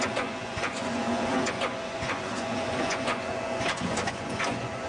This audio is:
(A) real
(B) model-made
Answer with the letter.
B